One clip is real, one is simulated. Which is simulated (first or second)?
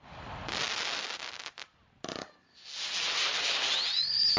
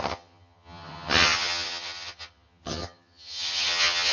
second